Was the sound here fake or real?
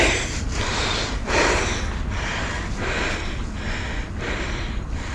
real